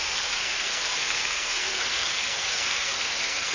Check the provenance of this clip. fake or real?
fake